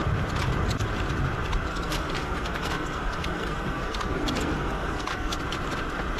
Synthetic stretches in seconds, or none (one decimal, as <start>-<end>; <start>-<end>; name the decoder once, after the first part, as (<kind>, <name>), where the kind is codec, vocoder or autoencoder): 1.7-5.4 (codec, SNAC)

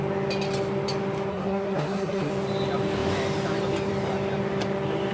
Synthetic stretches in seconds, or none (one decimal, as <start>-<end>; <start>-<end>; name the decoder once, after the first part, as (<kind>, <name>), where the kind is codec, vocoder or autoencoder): 1.3-2.3 (codec, SNAC)